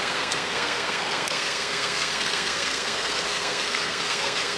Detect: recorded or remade remade